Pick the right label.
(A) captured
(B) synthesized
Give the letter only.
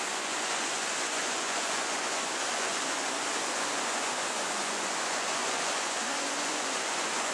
B